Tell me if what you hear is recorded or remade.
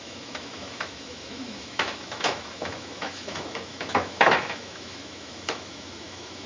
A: remade